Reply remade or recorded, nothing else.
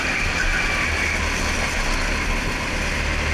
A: recorded